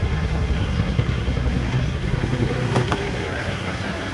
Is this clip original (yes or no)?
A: no